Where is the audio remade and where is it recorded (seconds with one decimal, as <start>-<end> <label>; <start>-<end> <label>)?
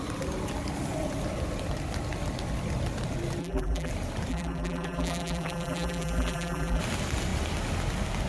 0.0-3.4 recorded; 3.4-3.9 remade; 3.9-4.3 recorded; 4.3-6.8 remade; 6.8-8.3 recorded